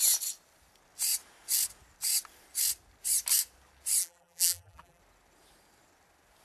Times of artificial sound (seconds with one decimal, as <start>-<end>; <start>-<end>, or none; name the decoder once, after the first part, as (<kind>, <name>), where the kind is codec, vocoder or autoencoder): 4.0-5.0 (vocoder, BigVGAN v2)